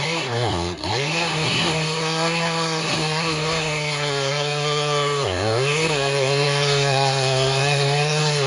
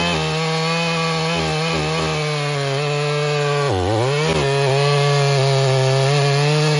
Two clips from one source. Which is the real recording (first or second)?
second